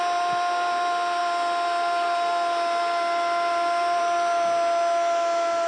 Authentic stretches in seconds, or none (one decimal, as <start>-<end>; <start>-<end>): 0.0-5.7